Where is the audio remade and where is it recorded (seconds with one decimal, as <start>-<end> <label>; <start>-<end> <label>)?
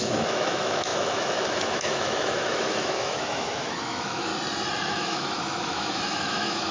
0.0-4.3 remade; 4.3-4.9 recorded; 4.9-6.7 remade